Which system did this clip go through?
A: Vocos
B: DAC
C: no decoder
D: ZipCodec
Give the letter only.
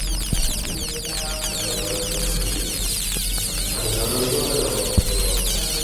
C